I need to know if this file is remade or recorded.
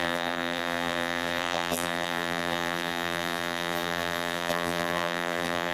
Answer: remade